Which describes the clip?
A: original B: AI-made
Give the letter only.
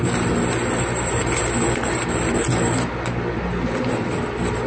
A